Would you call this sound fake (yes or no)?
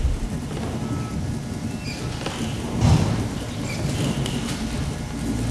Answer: no